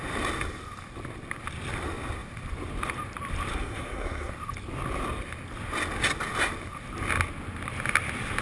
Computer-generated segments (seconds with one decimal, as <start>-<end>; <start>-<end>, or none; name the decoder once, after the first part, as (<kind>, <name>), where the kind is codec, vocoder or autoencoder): 3.5-4.3 (codec, SNAC)